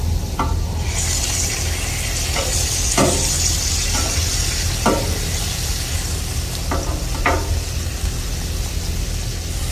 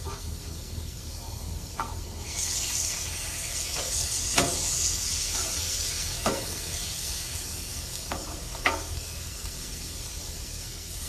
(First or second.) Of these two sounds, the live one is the first